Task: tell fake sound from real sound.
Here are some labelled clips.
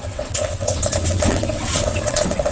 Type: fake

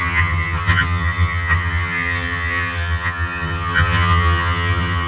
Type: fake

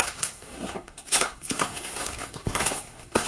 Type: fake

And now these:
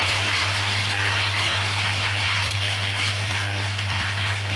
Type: fake